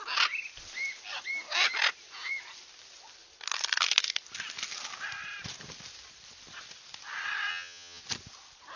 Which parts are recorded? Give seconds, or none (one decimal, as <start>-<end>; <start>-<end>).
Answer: 0.0-7.5; 8.0-8.8